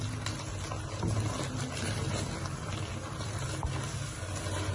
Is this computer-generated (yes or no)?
no